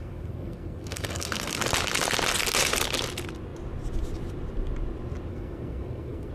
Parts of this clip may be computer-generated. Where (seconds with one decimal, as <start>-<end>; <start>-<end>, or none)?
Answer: 0.0-1.6; 5.3-6.3